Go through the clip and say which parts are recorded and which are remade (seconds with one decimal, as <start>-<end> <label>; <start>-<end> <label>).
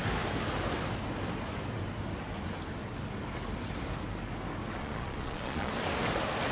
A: 0.0-4.8 recorded; 4.8-5.7 remade; 5.7-6.5 recorded